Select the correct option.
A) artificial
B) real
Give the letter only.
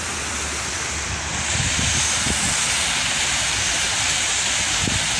B